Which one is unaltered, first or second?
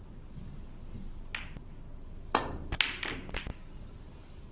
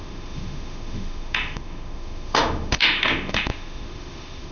first